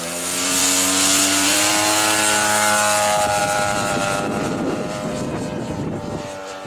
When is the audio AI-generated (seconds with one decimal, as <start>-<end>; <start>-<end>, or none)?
0.0-0.6; 1.2-1.7; 3.4-6.7